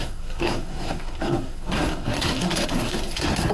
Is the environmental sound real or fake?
fake